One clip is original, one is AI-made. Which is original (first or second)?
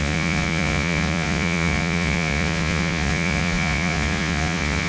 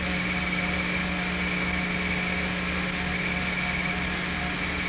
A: second